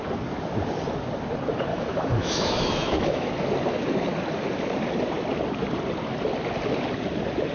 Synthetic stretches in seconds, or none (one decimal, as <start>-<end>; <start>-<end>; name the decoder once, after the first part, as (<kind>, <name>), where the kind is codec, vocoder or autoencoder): 1.7-3.3 (autoencoder, DAC-VAE)